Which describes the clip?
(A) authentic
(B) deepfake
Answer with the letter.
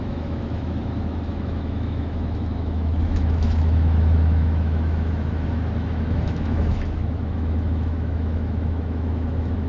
B